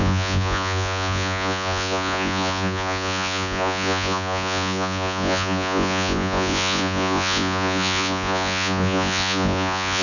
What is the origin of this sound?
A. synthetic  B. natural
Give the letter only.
A